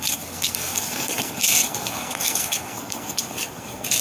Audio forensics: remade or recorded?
remade